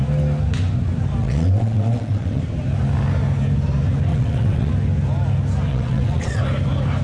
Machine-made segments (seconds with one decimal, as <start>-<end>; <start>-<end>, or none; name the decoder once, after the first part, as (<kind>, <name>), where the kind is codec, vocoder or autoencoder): 1.2-2.4 (vocoder, WaveNeXt); 4.1-4.7; 5.7-6.4